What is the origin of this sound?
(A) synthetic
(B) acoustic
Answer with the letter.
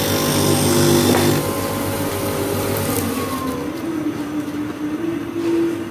B